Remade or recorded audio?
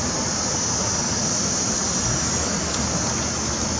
recorded